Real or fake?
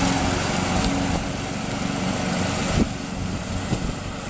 real